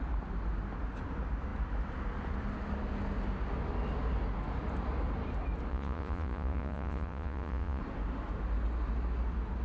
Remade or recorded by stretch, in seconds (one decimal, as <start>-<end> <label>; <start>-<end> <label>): 0.0-5.7 recorded; 5.7-7.8 remade; 7.8-9.6 recorded